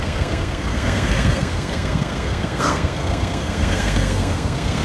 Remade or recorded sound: remade